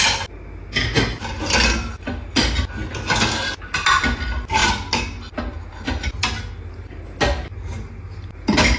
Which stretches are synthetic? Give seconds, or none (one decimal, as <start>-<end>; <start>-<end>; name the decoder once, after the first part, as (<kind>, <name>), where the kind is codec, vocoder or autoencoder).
none